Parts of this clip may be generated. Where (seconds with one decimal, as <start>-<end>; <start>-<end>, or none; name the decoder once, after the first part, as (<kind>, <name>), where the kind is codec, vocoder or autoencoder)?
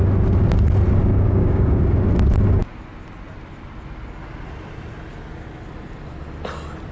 1.1-1.8 (codec, DAC)